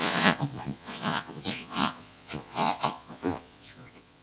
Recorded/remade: remade